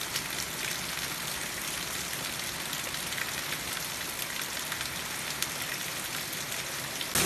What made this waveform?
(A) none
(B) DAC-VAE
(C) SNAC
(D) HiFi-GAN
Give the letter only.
A